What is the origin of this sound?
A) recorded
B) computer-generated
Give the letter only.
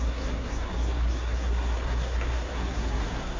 B